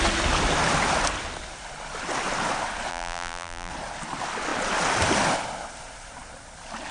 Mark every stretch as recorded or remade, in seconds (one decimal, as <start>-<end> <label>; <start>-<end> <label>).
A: 0.0-2.9 recorded; 2.9-3.7 remade; 3.7-6.9 recorded